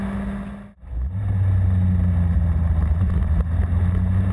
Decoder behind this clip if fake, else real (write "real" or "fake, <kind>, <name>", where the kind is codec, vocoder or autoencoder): real